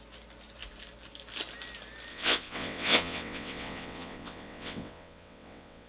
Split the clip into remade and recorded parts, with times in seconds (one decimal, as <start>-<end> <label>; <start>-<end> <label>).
0.0-2.1 recorded; 2.1-5.9 remade